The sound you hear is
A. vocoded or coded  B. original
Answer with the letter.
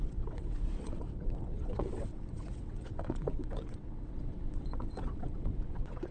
A